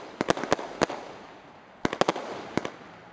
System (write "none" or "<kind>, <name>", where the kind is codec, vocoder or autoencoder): none